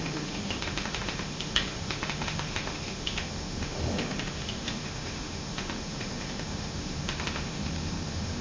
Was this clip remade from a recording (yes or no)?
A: yes